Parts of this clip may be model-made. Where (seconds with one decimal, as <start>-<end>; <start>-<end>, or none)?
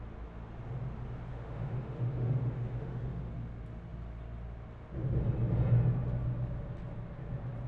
1.3-3.3